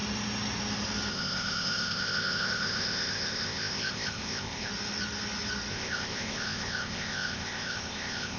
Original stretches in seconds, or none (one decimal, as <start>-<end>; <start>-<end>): 0.0-1.1; 4.7-5.7